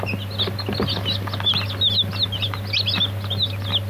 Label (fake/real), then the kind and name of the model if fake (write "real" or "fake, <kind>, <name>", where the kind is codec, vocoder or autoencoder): real